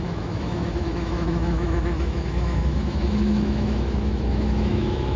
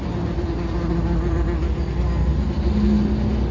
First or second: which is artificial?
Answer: first